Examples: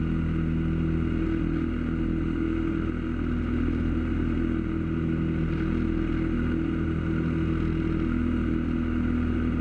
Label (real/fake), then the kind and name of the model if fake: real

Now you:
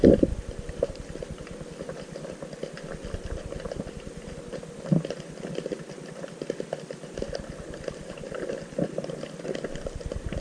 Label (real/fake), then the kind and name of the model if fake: real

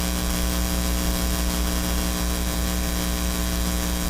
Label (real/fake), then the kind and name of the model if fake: real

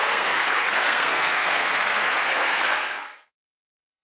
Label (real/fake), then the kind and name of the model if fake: fake, codec, SNAC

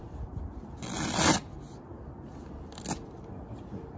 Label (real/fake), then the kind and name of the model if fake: real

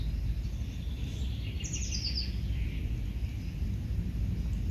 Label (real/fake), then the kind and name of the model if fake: real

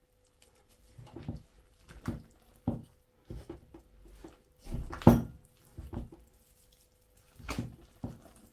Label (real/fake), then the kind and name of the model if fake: real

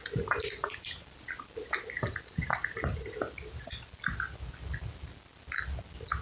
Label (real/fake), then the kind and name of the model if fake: real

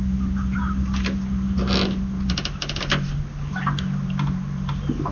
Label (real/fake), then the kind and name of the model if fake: real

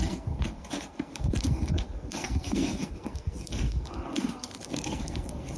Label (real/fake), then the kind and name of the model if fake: fake, codec, SNAC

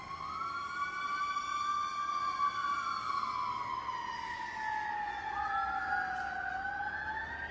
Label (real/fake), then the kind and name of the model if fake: real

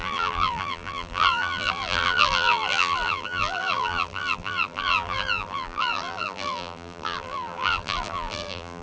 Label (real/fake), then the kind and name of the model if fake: fake, vocoder, BigVGAN v2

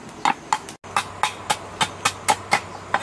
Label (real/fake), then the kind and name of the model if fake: real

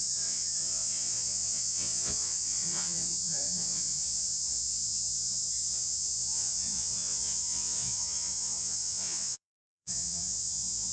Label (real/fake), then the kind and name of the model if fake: fake, vocoder, Vocos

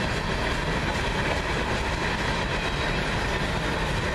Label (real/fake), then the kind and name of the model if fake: real